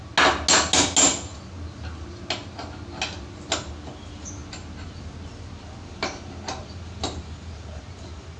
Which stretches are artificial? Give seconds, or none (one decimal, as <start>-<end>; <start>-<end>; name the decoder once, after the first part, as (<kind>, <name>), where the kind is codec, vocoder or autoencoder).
none